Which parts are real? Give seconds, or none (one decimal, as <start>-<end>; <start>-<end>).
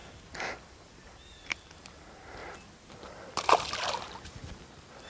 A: 0.0-5.1